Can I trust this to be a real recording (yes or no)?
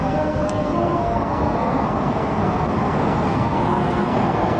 no